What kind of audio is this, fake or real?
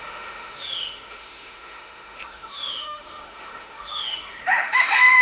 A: fake